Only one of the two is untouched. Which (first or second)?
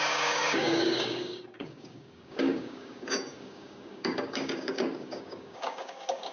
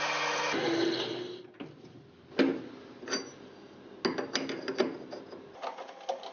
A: second